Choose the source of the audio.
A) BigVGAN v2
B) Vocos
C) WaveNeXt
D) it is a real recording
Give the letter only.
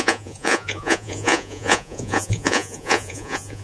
B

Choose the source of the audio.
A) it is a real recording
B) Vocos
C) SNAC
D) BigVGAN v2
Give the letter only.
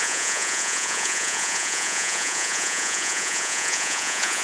B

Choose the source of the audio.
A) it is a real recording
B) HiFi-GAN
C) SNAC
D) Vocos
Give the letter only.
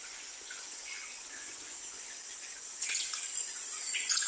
D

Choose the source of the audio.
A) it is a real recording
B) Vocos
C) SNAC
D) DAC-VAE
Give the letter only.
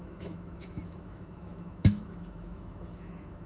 D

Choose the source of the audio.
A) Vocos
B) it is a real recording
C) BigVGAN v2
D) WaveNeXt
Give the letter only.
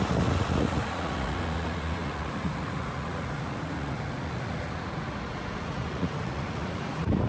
A